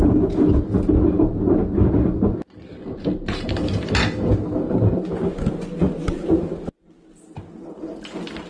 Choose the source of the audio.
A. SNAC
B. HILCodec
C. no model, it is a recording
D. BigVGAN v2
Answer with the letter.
C